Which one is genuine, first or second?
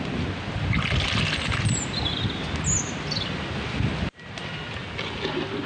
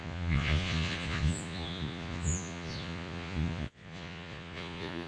first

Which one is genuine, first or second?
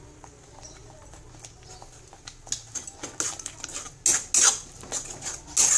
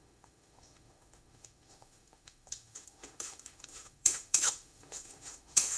first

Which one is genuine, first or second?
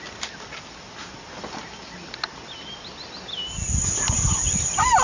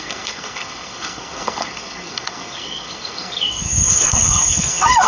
first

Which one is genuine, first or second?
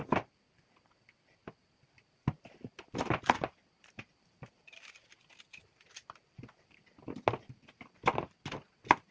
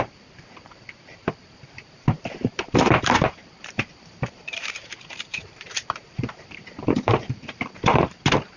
first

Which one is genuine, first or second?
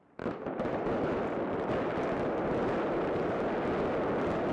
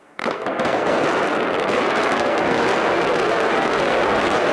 first